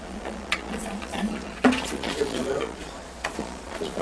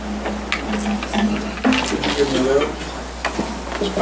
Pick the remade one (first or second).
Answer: first